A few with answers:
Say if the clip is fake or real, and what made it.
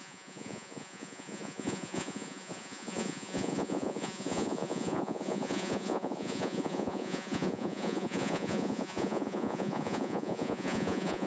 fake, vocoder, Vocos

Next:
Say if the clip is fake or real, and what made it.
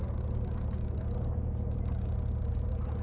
real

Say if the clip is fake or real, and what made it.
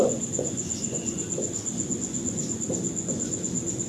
fake, vocoder, Vocos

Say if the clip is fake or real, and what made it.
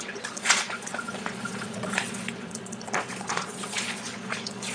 fake, vocoder, Vocos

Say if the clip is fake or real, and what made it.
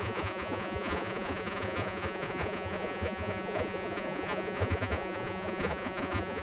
fake, vocoder, Vocos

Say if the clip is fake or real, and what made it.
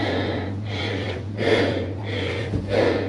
fake, vocoder, Vocos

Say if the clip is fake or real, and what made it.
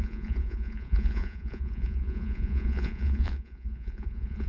fake, vocoder, Vocos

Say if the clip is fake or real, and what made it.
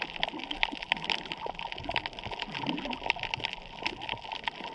real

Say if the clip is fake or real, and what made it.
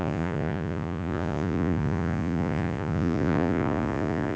fake, vocoder, Vocos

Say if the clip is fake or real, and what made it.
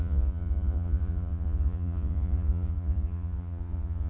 fake, vocoder, Vocos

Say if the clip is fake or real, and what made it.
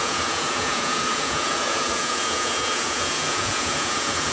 fake, vocoder, Vocos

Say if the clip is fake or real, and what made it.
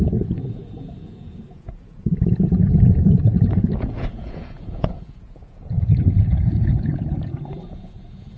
fake, vocoder, Vocos